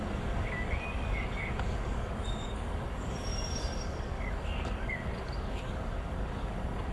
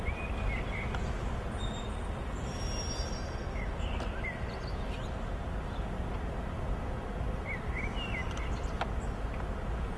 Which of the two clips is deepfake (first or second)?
first